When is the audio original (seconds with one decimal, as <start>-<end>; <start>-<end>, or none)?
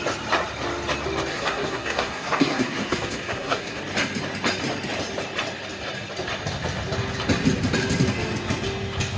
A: 0.0-1.3; 3.8-9.2